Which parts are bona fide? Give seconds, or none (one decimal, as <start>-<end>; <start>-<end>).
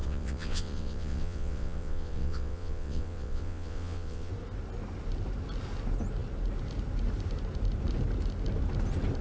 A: 4.3-9.2